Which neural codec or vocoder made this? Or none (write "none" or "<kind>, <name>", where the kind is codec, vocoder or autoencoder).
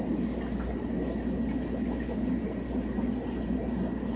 none